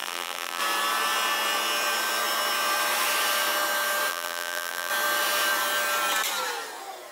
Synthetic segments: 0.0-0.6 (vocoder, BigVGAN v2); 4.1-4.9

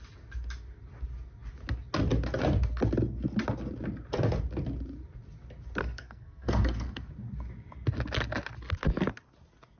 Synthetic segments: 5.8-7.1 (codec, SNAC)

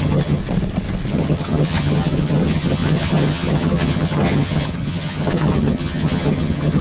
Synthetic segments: 0.0-0.4 (vocoder, HiFi-GAN); 1.1-6.8

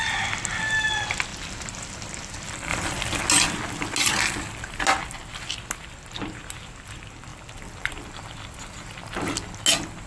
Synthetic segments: 1.3-2.2 (vocoder, BigVGAN v2); 2.7-3.3; 7.3-7.9